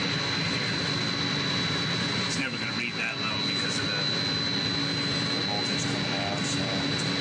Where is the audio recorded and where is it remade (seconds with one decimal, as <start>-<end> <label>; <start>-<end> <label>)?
0.0-7.2 recorded